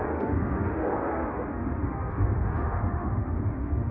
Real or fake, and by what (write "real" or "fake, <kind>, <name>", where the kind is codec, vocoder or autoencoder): fake, autoencoder, DAC-VAE